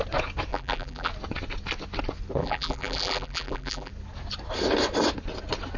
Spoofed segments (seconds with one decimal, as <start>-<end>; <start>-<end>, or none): 0.5-1.1; 2.4-3.9